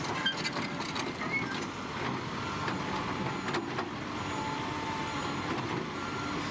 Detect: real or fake real